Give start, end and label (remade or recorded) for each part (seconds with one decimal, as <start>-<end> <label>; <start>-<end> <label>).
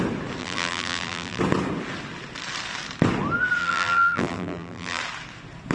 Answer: 0.0-0.4 recorded; 0.4-1.4 remade; 1.4-3.6 recorded; 3.6-5.0 remade; 5.0-5.7 recorded